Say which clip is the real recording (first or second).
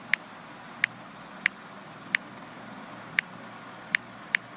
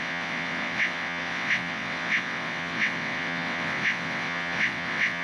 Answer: first